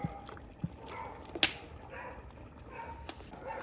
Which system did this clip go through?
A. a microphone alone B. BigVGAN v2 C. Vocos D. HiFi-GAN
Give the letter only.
A